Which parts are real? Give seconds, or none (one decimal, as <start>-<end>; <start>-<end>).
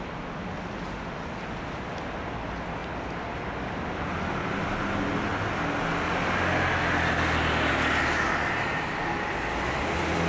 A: 0.0-10.3